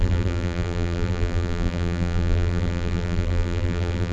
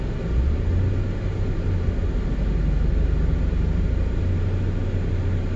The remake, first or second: first